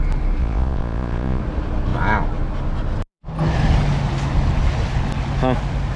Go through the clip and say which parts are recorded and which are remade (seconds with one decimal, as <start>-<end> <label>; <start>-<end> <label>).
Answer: 0.0-0.4 recorded; 0.4-1.4 remade; 1.4-6.0 recorded